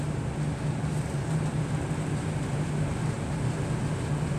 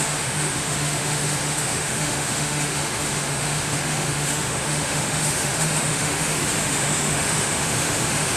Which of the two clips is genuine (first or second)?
first